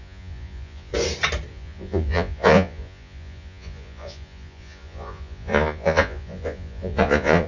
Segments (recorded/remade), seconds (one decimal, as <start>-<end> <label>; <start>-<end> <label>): 0.0-0.9 remade; 0.9-1.5 recorded; 1.5-7.5 remade